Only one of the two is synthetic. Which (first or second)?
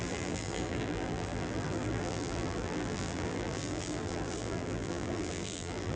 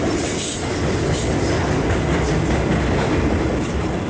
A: first